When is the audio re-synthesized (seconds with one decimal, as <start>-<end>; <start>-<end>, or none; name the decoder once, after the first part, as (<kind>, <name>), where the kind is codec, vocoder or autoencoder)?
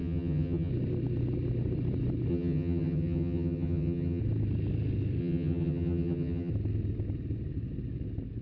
0.0-0.7 (vocoder, HiFi-GAN); 2.3-4.2; 5.2-6.5